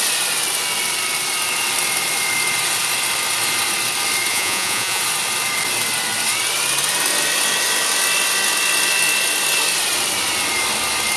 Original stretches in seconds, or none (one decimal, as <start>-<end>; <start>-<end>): 0.0-4.3; 5.0-11.2